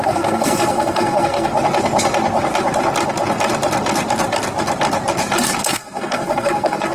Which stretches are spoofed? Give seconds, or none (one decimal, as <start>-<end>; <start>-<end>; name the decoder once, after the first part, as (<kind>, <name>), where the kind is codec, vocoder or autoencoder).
0.0-1.5 (codec, SNAC); 5.6-6.9